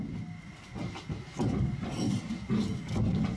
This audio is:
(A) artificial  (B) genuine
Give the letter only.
B